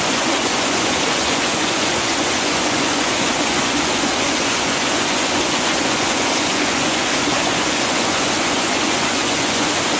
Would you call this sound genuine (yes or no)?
no